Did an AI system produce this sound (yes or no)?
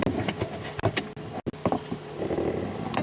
no